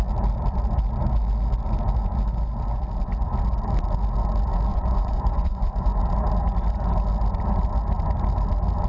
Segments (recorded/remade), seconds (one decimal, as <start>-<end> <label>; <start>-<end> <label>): 0.0-4.7 recorded; 4.7-6.0 remade; 6.0-8.9 recorded